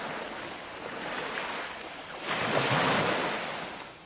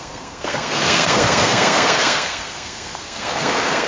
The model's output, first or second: second